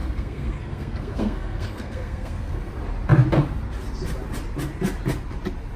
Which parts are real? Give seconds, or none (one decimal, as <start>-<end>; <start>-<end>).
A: 2.7-5.8